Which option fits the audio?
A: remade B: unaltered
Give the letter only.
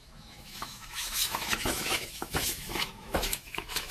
A